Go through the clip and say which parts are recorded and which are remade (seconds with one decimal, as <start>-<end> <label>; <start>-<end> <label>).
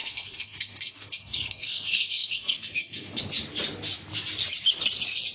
0.0-3.2 remade; 3.2-5.3 recorded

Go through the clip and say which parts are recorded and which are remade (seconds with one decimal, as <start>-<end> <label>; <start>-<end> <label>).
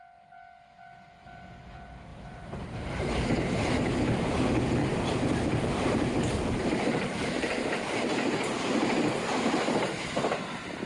0.0-2.1 recorded; 2.1-3.1 remade; 3.1-4.8 recorded; 4.8-7.8 remade; 7.8-10.9 recorded